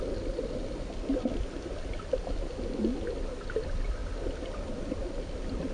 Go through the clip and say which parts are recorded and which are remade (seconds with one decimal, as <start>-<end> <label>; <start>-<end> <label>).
0.0-5.7 recorded